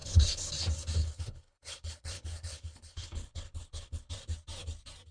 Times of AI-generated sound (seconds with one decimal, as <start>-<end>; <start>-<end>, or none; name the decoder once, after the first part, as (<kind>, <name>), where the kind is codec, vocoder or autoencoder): 0.0-0.5 (codec, HILCodec); 1.0-4.1